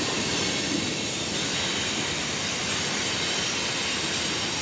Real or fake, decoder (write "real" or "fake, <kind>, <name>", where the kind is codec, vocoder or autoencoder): real